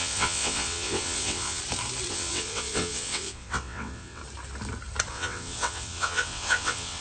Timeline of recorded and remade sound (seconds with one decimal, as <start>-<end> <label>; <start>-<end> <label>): 0.0-1.6 remade; 1.6-2.1 recorded; 2.1-4.2 remade; 4.2-5.1 recorded; 5.1-7.0 remade